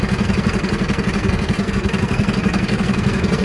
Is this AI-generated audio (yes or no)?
yes